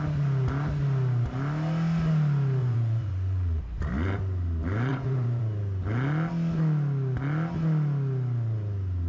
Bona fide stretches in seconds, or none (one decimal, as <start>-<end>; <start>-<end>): 0.0-2.6; 3.9-4.9; 5.4-9.1